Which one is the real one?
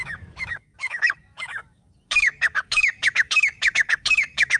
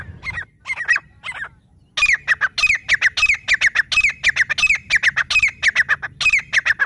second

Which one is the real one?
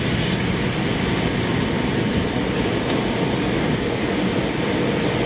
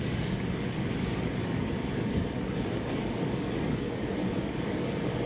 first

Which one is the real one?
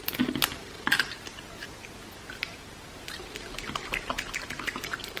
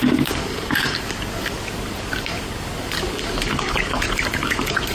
first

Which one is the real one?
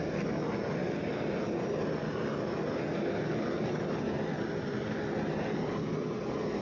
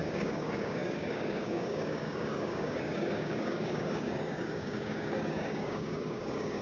first